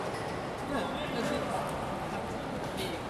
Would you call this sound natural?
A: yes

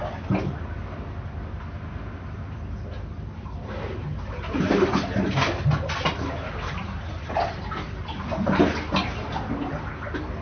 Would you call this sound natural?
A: yes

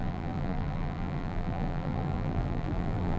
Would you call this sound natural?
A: no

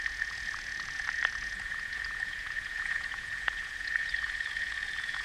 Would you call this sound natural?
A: no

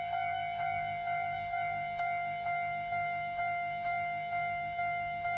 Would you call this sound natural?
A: no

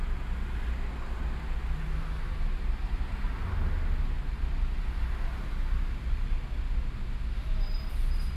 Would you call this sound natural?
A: yes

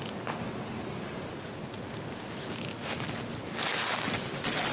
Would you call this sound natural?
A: yes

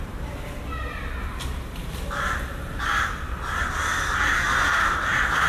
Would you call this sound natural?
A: yes